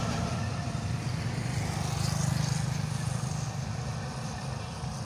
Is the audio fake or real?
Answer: real